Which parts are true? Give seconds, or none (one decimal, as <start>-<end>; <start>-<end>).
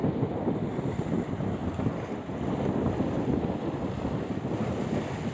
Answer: 0.0-5.3